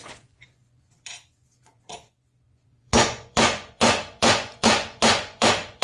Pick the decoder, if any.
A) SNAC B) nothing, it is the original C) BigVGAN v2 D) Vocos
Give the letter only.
D